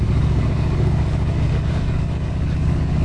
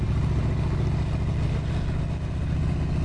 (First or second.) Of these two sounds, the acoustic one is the second